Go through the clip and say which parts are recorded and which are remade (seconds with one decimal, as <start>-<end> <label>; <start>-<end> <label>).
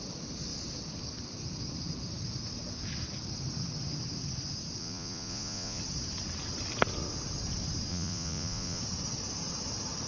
0.0-4.8 recorded; 4.8-5.8 remade; 5.8-7.9 recorded; 7.9-8.8 remade; 8.8-10.1 recorded